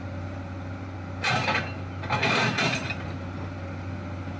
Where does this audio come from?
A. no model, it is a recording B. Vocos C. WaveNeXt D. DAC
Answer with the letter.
A